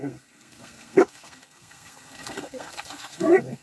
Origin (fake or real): fake